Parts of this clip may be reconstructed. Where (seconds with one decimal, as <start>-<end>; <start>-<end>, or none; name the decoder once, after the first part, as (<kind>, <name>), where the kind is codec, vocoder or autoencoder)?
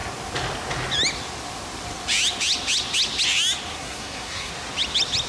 3.7-4.5 (codec, SNAC)